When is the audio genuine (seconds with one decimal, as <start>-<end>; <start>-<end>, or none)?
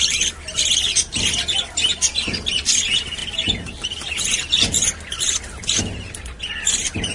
0.0-7.1